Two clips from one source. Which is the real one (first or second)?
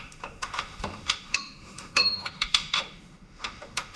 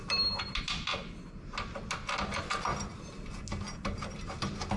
second